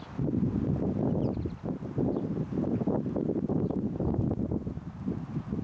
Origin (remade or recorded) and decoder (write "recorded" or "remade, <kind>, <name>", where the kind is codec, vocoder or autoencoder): recorded